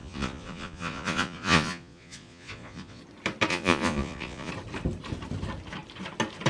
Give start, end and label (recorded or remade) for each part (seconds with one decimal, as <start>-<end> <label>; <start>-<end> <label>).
0.0-3.0 remade; 3.0-3.5 recorded; 3.5-4.5 remade; 4.5-6.5 recorded